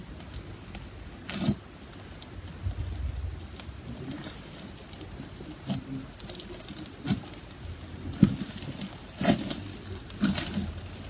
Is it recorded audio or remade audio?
recorded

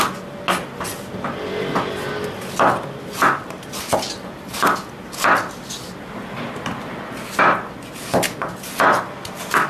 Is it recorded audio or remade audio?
recorded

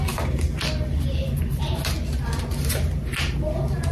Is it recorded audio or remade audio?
recorded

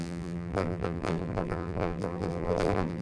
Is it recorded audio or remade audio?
remade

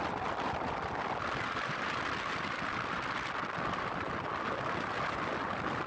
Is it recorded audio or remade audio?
recorded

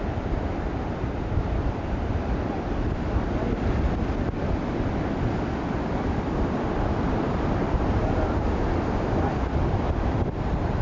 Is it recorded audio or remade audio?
remade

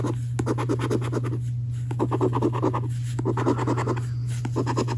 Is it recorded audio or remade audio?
recorded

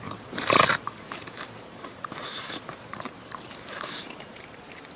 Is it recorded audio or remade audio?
remade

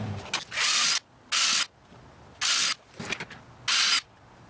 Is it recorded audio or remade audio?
recorded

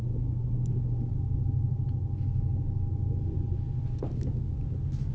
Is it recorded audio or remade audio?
recorded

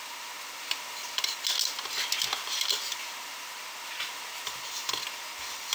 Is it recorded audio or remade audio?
recorded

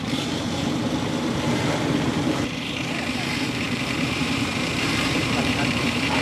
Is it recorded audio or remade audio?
remade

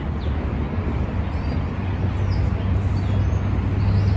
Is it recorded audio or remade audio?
recorded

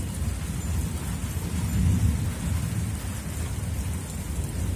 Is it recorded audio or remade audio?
recorded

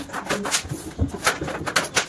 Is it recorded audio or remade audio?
recorded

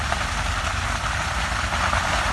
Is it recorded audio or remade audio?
remade